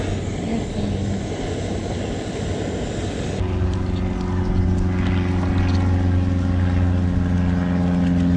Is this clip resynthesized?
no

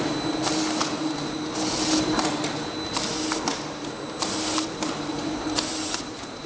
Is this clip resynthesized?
no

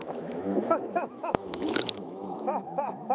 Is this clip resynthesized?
yes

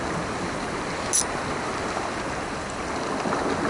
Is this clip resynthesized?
no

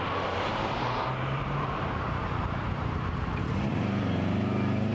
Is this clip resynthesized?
yes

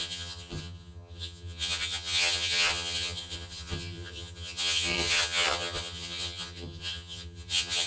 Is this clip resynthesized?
yes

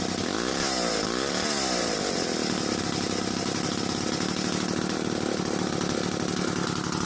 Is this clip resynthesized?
no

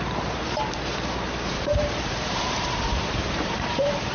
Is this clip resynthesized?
yes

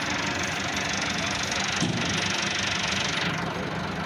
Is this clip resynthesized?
no